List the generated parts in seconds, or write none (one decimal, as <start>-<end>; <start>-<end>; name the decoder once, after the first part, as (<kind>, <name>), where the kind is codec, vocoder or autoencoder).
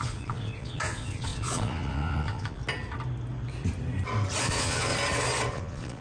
0.0-2.6 (vocoder, Vocos); 4.4-4.9; 5.5-6.0